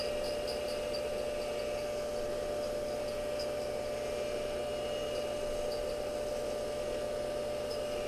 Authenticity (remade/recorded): recorded